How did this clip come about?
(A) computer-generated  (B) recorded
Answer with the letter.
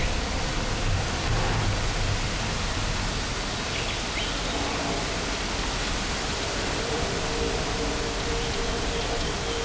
B